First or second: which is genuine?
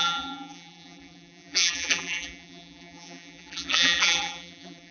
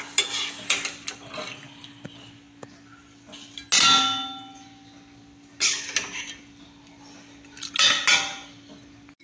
second